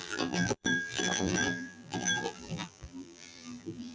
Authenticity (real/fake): fake